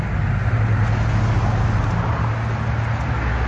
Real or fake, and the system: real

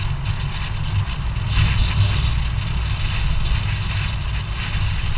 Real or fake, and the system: real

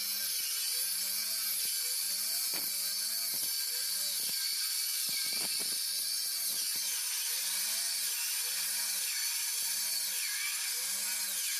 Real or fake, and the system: real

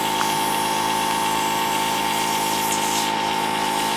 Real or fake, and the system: fake, vocoder, BigVGAN v2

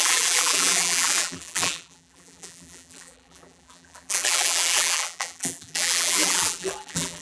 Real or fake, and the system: fake, vocoder, BigVGAN v2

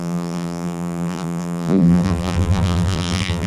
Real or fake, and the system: fake, vocoder, BigVGAN v2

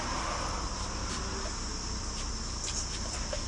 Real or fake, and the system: real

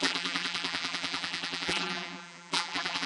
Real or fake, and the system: fake, vocoder, BigVGAN v2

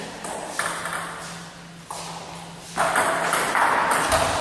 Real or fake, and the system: real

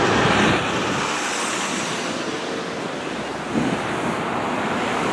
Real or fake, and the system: real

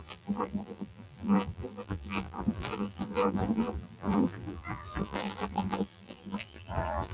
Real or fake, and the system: fake, vocoder, BigVGAN v2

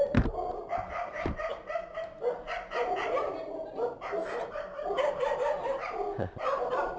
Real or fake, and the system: fake, vocoder, BigVGAN v2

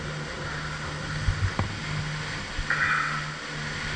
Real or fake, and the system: real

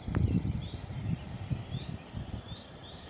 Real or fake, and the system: fake, vocoder, BigVGAN v2